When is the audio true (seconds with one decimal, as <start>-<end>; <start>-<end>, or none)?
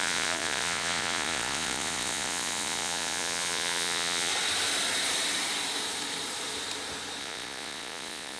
4.3-7.2